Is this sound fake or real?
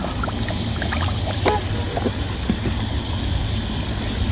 real